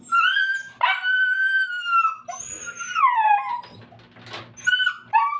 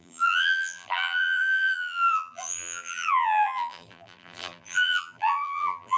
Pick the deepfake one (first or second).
second